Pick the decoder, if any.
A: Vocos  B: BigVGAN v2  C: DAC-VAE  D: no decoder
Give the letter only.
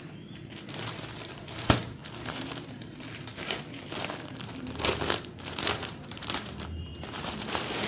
B